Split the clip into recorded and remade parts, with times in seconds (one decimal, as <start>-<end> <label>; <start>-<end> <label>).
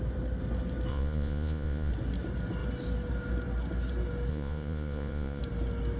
0.0-0.9 recorded; 0.9-1.9 remade; 1.9-4.3 recorded; 4.3-5.4 remade; 5.4-6.0 recorded